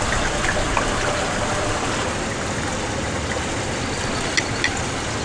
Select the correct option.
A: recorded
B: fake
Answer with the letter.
A